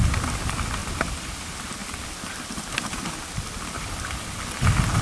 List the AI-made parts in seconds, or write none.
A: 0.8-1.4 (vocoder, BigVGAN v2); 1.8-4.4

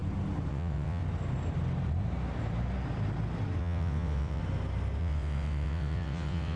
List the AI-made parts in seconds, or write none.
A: 0.5-1.0 (vocoder, WaveNeXt); 3.6-4.4; 5.0-6.6

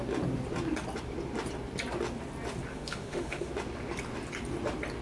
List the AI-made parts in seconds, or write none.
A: 2.7-3.5 (autoencoder, DAC-VAE)

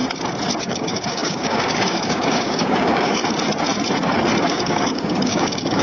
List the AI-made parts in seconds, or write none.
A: 0.6-3.2 (codec, DAC); 4.4-5.8